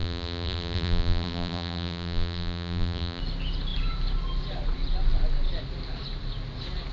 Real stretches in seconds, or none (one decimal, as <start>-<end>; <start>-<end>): 3.2-6.9